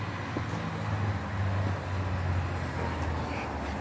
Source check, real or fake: real